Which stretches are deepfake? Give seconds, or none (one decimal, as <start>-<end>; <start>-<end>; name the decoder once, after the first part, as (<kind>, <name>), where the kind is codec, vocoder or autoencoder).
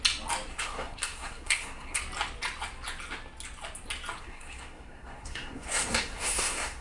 0.5-2.0 (codec, SNAC); 4.2-6.8